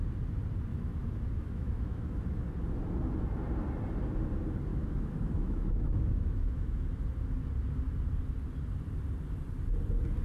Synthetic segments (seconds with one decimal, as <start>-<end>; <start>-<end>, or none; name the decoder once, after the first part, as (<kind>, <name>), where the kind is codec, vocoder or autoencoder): 0.7-2.5 (autoencoder, DAC-VAE); 4.7-6.8